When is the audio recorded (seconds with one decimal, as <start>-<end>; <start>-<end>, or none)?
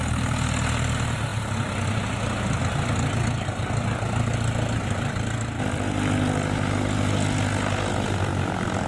0.0-8.9